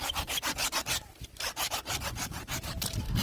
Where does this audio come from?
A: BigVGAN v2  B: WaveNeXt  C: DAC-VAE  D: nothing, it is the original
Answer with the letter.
A